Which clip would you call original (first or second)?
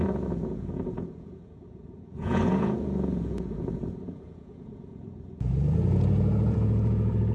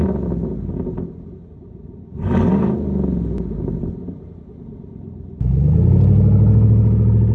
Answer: second